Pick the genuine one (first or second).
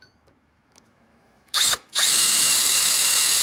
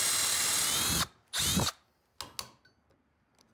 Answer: second